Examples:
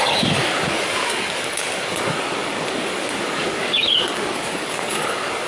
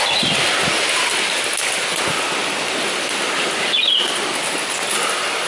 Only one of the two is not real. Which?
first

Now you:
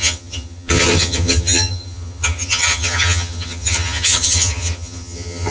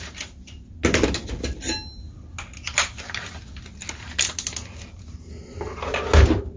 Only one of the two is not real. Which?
first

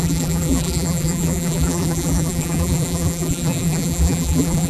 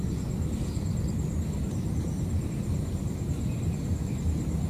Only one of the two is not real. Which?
first